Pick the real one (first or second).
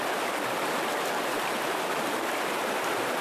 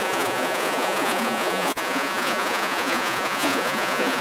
first